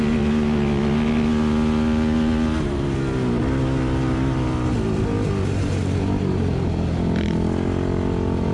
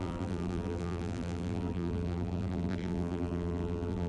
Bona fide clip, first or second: first